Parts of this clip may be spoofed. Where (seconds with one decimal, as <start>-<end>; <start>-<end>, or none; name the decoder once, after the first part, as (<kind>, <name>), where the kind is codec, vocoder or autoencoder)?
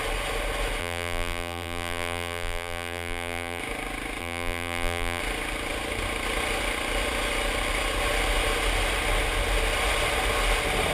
0.8-3.6 (vocoder, BigVGAN v2); 4.2-5.2